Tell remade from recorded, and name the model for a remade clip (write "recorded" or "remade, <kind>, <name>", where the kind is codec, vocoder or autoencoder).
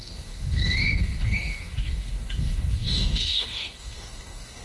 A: remade, codec, DAC